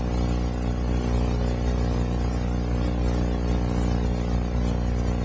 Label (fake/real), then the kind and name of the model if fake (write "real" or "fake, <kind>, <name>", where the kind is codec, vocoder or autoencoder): real